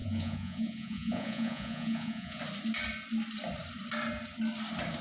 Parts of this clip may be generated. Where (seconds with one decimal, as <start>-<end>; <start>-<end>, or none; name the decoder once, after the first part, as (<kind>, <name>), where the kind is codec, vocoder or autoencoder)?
0.0-2.4 (vocoder, Vocos)